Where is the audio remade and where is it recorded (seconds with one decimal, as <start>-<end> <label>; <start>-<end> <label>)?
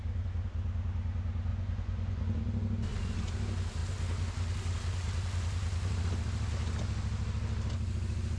0.0-1.5 recorded; 1.5-2.4 remade; 2.4-8.4 recorded